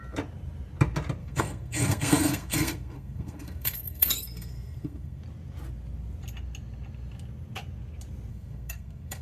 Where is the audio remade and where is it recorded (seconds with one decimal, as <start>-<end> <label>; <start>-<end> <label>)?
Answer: 0.0-1.2 recorded; 1.2-5.2 remade; 5.2-8.3 recorded; 8.3-9.2 remade